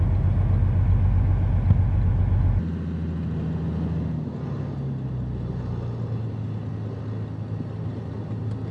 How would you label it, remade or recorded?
recorded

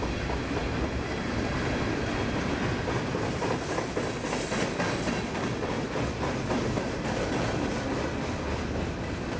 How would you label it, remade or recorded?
recorded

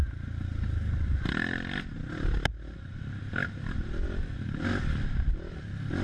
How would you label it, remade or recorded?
recorded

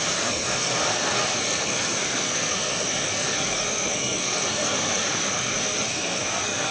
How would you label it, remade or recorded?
remade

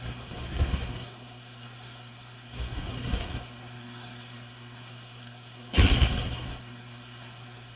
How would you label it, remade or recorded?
remade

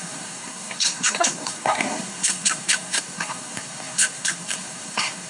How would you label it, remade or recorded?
remade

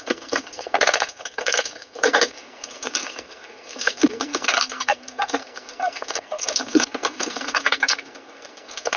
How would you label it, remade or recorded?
remade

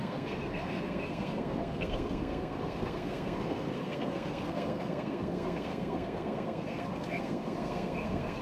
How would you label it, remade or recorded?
remade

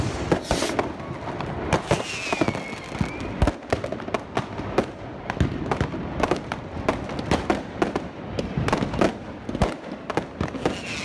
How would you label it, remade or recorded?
recorded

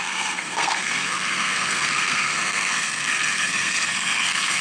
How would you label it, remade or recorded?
remade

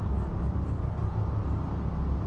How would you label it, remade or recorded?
recorded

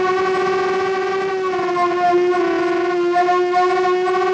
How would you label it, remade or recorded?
recorded